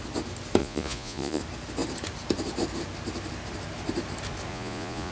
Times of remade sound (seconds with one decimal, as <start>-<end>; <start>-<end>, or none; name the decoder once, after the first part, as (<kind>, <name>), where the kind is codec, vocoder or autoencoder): 0.6-1.4 (vocoder, Vocos); 4.5-5.1